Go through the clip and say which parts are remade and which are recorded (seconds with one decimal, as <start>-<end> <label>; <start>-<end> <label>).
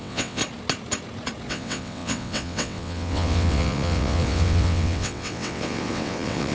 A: 0.0-0.4 remade; 0.4-1.5 recorded; 1.5-6.5 remade